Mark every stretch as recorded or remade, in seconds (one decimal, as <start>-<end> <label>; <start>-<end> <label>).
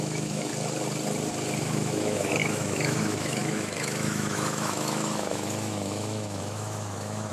0.0-0.5 remade; 0.5-1.6 recorded; 1.6-7.3 remade